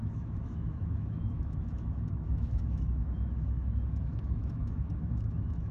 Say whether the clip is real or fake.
fake